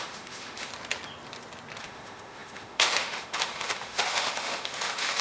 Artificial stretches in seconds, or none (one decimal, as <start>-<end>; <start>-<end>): 0.0-0.7; 1.8-5.2